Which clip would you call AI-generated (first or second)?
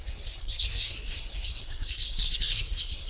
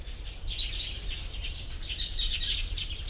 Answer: first